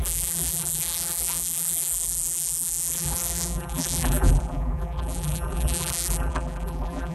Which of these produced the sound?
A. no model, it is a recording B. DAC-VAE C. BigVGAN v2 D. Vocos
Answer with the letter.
C